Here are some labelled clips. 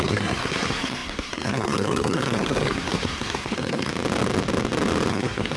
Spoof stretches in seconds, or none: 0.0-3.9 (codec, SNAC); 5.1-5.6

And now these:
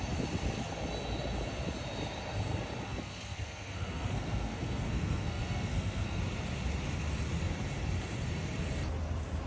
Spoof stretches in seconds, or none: 2.9-6.2 (codec, SNAC)

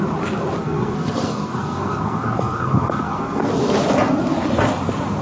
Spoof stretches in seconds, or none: 0.6-3.5 (codec, SNAC)